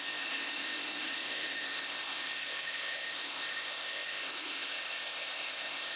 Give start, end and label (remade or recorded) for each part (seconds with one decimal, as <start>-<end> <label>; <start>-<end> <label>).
0.0-6.0 remade

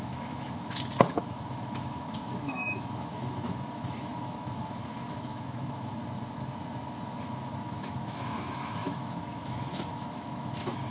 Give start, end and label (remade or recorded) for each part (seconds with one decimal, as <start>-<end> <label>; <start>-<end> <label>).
0.0-6.0 remade; 6.0-7.2 recorded; 7.2-10.9 remade

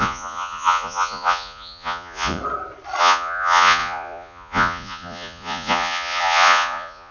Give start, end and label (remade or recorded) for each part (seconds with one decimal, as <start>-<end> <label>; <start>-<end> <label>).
0.0-2.4 remade; 2.4-3.0 recorded; 3.0-7.1 remade

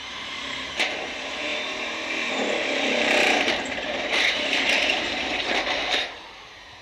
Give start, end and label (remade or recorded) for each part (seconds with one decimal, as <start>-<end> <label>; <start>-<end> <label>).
0.0-6.8 remade